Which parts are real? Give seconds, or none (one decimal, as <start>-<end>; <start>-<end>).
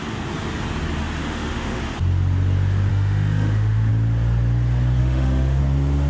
0.0-1.2; 1.8-2.9; 3.9-5.0; 5.6-6.1